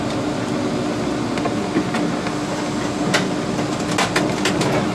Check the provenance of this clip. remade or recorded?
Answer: recorded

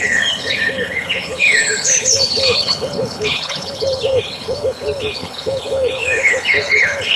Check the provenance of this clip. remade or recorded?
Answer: remade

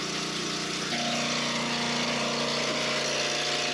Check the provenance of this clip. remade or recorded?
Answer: recorded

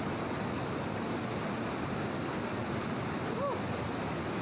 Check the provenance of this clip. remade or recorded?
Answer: recorded